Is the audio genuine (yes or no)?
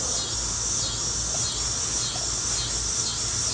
yes